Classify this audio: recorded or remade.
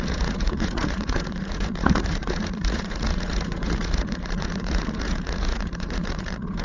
remade